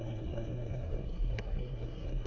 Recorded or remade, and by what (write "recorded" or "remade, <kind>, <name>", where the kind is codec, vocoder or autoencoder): remade, codec, SNAC